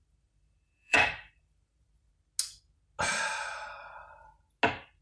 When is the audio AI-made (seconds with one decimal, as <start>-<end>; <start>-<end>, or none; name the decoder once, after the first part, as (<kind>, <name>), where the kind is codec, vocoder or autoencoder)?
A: 0.0-2.1 (vocoder, BigVGAN v2)